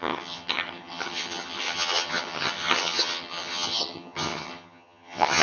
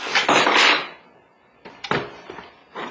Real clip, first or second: second